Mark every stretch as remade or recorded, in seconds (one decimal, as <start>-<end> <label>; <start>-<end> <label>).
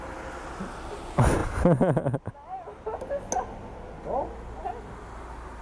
0.0-5.6 recorded